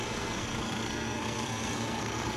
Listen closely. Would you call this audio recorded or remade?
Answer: remade